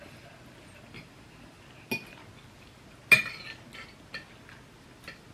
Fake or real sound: real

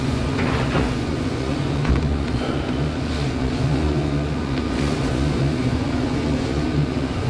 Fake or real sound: fake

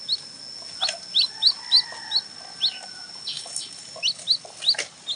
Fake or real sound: real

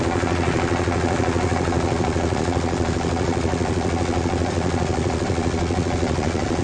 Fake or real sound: fake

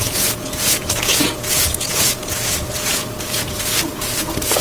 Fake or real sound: fake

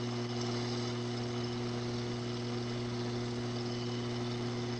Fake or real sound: real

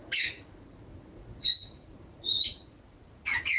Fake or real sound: fake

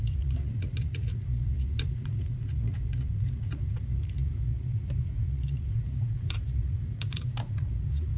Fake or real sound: fake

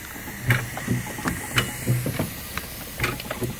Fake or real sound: real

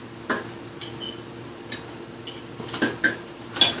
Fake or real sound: real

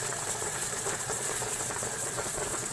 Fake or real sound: fake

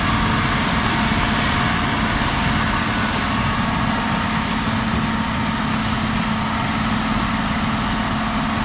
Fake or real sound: real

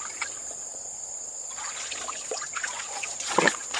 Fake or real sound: fake